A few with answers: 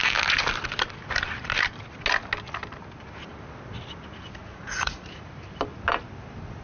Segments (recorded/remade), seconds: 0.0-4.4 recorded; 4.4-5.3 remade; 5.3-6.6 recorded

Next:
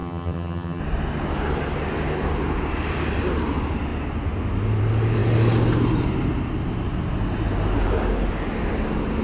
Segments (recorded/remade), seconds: 0.0-0.8 remade; 0.8-9.2 recorded

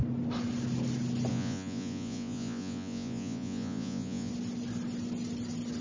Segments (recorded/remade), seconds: 0.0-1.3 recorded; 1.3-4.3 remade; 4.3-5.8 recorded

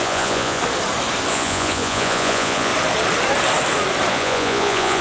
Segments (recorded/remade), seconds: 0.0-0.6 remade; 0.6-1.3 recorded; 1.3-2.7 remade; 2.7-4.1 recorded; 4.1-5.0 remade

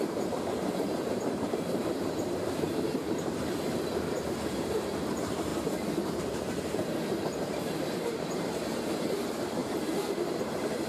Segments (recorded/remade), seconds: 0.0-5.5 remade; 5.5-6.1 recorded; 6.1-10.9 remade

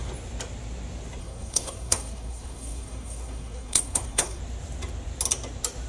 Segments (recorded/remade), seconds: 0.0-1.2 recorded; 1.2-4.4 remade; 4.4-5.9 recorded

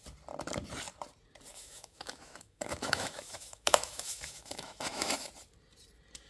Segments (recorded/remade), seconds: 0.0-1.5 recorded; 1.5-5.3 remade; 5.3-6.3 recorded